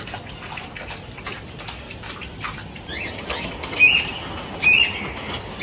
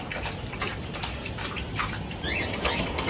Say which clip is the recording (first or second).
first